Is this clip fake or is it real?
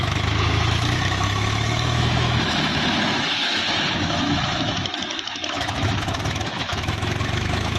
fake